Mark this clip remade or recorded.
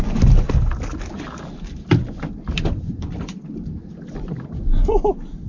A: recorded